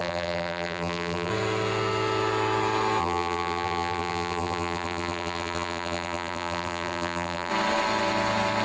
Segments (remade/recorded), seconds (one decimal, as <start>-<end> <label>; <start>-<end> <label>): 0.0-1.3 remade; 1.3-3.0 recorded; 3.0-7.5 remade; 7.5-8.6 recorded